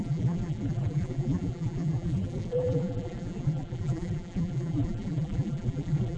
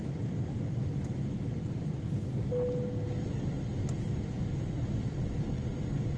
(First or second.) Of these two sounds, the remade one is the first